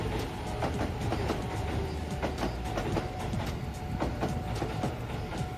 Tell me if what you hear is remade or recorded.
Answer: recorded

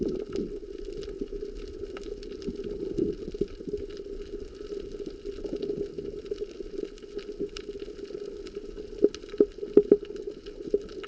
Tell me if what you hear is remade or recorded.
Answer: recorded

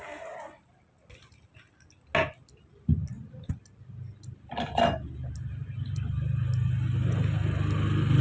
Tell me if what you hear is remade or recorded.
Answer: recorded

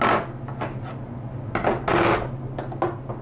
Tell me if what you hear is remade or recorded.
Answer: recorded